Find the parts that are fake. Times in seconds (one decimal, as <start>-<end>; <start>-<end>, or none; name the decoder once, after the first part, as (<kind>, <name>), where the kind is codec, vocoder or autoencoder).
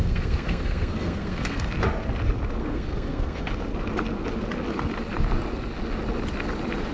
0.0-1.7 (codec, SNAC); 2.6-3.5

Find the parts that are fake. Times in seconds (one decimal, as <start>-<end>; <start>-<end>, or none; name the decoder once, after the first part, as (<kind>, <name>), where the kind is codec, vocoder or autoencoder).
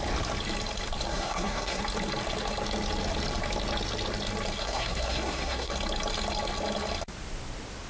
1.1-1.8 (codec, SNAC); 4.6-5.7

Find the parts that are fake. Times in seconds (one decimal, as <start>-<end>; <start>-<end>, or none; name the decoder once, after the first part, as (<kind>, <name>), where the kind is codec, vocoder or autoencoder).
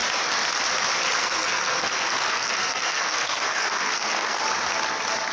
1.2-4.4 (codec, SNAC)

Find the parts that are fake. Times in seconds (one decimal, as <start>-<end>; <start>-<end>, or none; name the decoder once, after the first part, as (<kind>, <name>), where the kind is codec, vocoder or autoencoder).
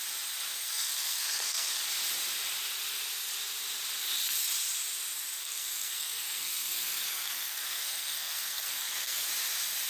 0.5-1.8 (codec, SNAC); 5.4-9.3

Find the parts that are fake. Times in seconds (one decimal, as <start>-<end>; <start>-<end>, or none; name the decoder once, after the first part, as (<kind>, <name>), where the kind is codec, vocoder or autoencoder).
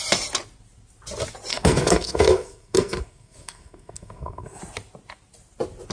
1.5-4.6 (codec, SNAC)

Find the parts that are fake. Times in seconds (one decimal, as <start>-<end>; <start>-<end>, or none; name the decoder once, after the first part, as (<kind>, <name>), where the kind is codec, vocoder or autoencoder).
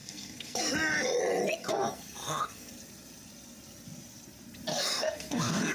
0.0-0.7 (codec, SNAC); 1.6-2.7; 4.7-5.7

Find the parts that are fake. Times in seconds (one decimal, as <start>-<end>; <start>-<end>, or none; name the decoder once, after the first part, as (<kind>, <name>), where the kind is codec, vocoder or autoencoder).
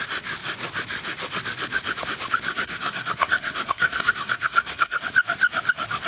2.5-5.0 (codec, SNAC)